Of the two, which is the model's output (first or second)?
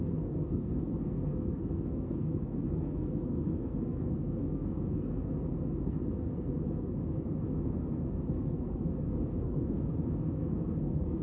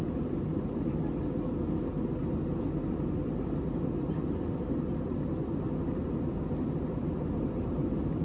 first